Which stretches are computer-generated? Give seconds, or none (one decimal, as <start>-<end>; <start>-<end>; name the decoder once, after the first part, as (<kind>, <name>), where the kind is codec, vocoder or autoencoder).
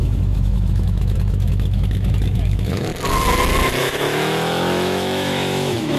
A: 0.0-2.9 (autoencoder, DAC-VAE); 3.8-6.0